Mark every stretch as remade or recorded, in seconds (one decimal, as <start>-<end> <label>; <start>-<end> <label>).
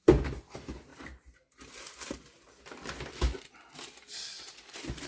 0.0-0.9 recorded; 0.9-2.6 remade; 2.6-5.1 recorded